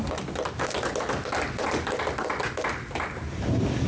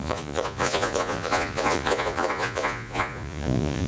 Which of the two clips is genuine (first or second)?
first